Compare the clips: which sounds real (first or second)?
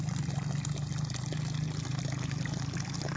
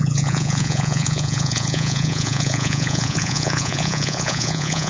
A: first